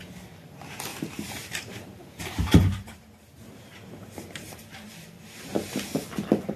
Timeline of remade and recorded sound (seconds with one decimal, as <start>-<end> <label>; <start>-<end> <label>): 0.0-0.9 recorded; 0.9-4.9 remade; 4.9-6.6 recorded